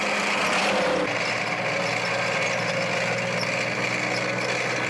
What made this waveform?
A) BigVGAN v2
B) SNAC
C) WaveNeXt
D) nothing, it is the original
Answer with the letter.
D